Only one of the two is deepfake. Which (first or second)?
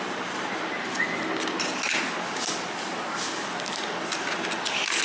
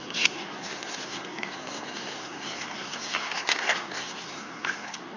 second